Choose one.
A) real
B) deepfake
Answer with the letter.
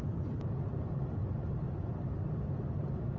A